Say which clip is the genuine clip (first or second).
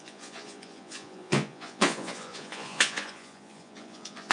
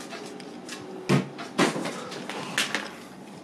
second